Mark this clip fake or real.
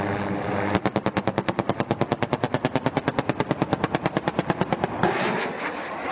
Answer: real